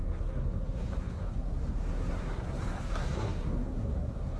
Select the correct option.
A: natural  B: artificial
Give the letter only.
B